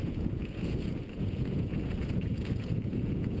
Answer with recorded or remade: remade